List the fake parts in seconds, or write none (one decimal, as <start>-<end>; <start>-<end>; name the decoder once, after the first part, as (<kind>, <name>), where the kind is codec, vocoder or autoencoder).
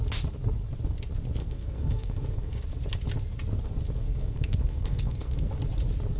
1.4-2.6 (codec, SNAC); 4.0-5.5